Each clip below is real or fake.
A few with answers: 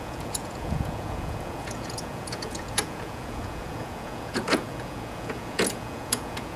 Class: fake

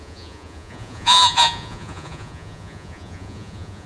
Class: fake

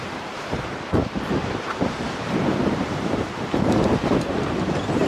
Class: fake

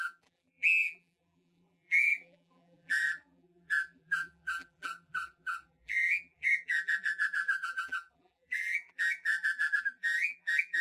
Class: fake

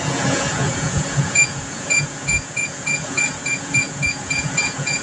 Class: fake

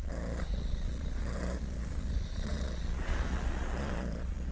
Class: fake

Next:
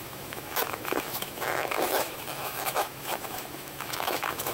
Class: fake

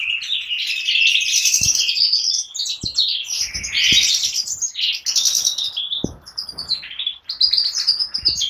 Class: real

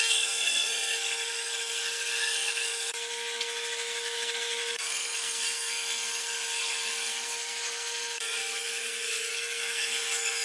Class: fake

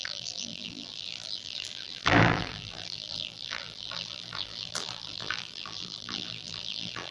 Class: fake